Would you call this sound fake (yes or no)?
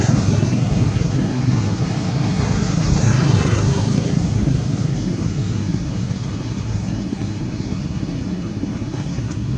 yes